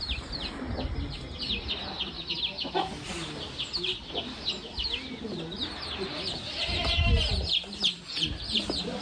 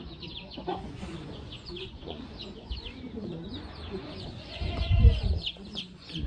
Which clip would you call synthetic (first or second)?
second